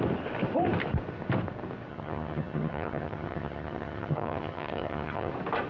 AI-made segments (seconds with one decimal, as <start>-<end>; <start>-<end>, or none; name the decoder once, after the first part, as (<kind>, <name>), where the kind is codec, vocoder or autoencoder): 1.9-5.3 (vocoder, HiFi-GAN)